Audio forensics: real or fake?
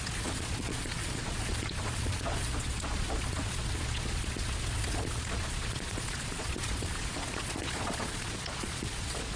fake